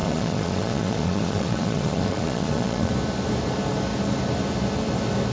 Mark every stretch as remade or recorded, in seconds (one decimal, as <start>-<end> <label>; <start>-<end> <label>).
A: 0.0-2.9 remade; 2.9-5.3 recorded